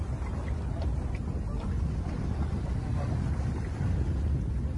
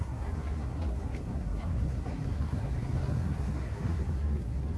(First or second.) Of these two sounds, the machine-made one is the second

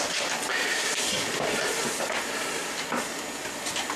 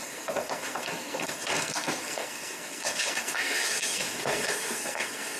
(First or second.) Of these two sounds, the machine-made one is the second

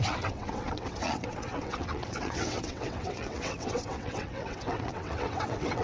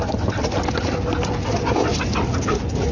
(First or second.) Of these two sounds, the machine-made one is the first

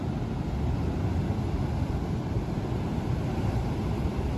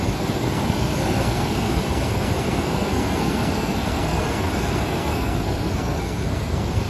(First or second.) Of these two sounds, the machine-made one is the second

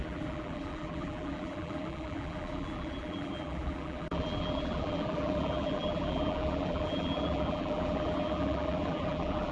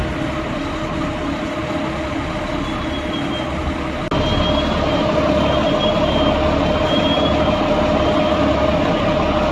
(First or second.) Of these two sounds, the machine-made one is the first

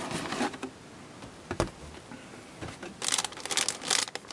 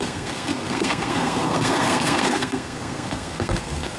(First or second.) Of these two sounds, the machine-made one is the second